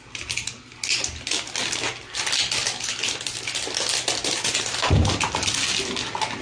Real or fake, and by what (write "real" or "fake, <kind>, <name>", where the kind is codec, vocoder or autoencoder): real